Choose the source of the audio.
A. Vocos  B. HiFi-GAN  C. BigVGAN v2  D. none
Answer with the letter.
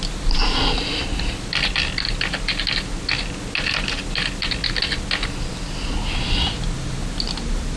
D